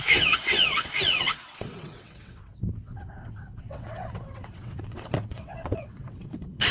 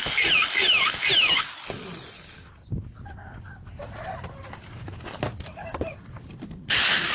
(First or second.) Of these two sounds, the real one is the second